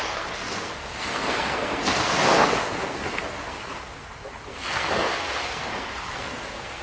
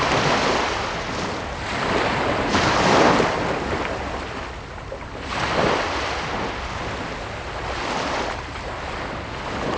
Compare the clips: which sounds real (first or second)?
second